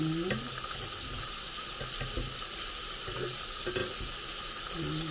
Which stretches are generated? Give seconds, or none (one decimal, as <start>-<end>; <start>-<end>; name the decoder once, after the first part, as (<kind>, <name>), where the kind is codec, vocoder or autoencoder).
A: none